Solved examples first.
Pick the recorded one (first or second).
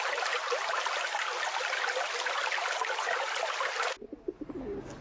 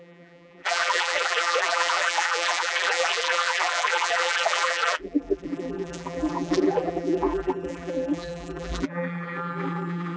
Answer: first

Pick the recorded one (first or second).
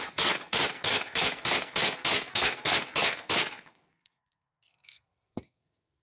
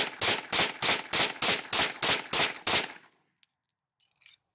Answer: second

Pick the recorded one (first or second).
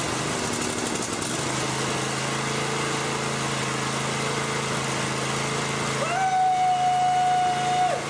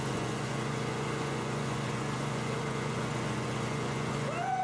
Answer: first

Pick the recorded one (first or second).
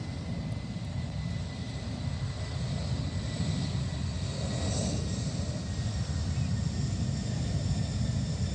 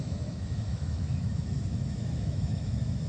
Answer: first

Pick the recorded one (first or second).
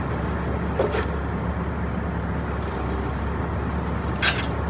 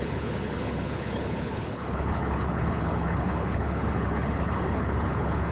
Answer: first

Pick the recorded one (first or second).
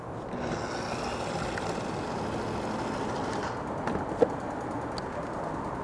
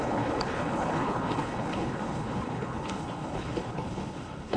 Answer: first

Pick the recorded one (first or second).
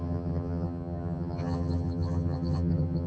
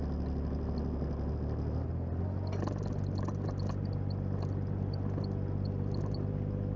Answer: second